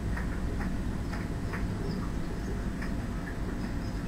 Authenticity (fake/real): real